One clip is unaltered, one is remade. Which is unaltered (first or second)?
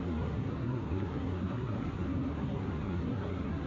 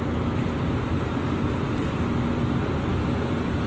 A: second